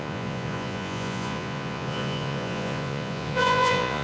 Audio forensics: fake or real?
fake